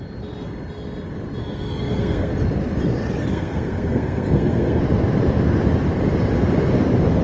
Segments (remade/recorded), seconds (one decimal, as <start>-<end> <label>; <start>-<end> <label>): 0.0-1.4 recorded; 1.4-2.3 remade; 2.3-3.3 recorded; 3.3-4.8 remade; 4.8-7.2 recorded